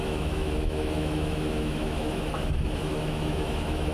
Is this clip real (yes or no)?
no